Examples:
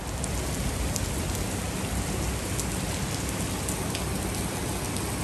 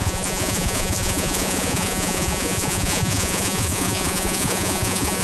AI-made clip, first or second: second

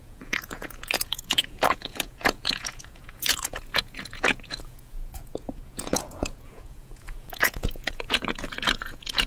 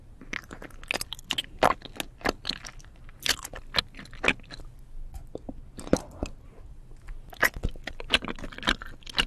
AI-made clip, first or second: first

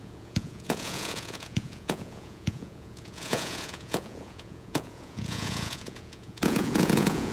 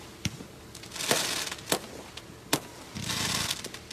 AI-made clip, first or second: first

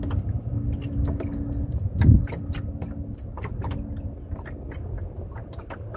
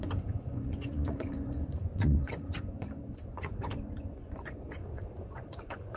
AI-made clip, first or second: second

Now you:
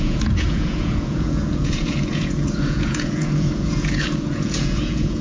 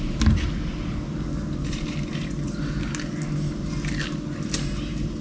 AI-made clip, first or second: first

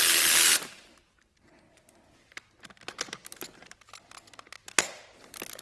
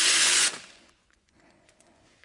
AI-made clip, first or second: second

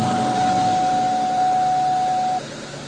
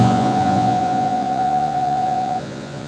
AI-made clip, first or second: second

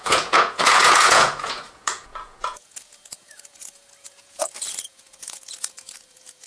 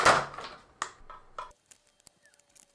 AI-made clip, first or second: first